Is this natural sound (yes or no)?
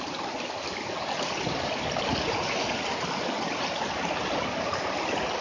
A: yes